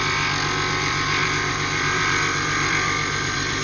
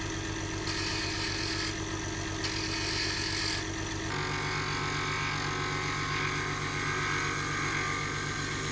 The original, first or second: second